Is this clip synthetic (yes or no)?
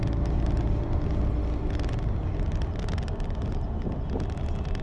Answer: no